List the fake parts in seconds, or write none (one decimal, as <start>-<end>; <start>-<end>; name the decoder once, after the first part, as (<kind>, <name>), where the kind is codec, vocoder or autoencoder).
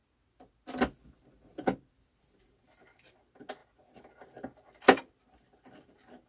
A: none